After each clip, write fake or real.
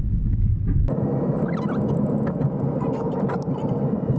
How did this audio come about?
real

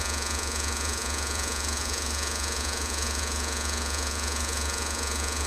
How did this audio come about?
fake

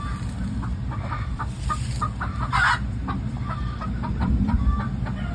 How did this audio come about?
real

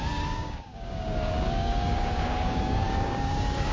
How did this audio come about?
fake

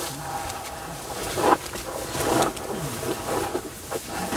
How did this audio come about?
real